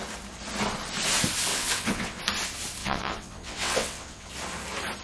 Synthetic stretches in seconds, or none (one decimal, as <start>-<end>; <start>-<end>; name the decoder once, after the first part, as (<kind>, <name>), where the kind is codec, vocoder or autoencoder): 1.5-2.2 (vocoder, WaveNeXt); 2.8-4.3